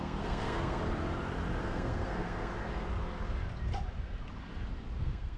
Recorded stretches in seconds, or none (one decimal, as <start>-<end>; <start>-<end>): 0.8-1.6; 2.5-5.0